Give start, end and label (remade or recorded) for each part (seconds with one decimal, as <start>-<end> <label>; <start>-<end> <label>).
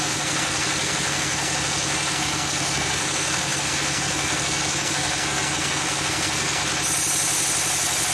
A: 0.0-6.6 remade; 6.6-8.1 recorded